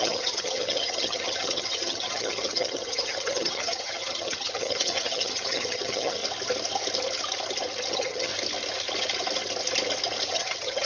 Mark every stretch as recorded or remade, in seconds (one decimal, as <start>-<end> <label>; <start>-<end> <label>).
0.0-6.2 remade; 6.2-7.9 recorded; 7.9-8.3 remade; 8.3-10.3 recorded; 10.3-10.9 remade